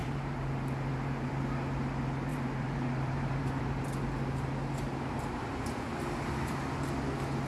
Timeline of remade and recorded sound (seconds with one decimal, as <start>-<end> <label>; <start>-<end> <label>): 0.0-1.3 remade; 1.3-2.3 recorded; 2.3-3.6 remade; 3.6-7.5 recorded